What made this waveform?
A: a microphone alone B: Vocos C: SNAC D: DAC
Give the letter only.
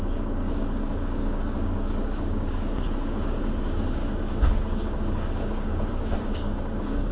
D